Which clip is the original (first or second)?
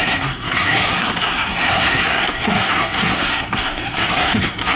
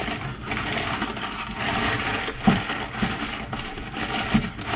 second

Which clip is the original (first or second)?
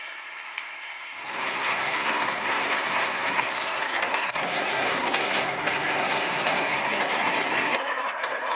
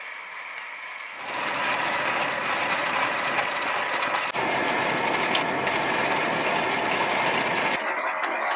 second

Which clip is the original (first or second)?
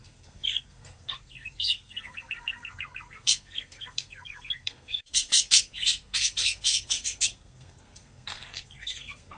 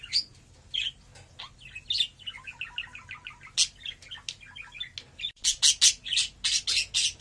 second